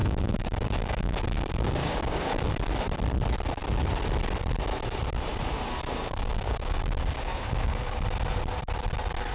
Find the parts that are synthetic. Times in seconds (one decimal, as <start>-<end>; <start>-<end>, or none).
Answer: 0.0-2.4; 5.3-8.0